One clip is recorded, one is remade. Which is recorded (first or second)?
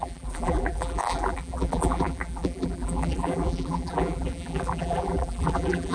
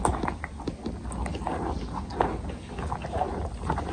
second